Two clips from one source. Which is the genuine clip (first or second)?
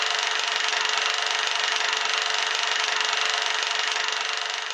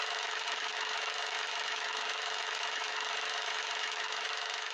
first